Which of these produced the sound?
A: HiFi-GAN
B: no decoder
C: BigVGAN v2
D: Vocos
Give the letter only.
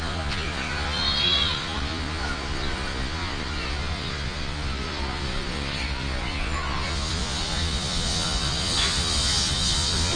D